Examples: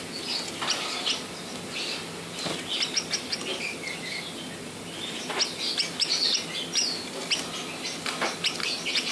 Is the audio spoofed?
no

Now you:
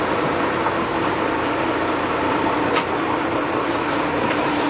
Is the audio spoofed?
no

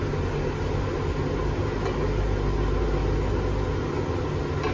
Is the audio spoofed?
no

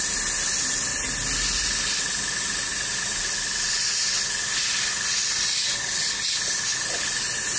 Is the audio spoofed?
no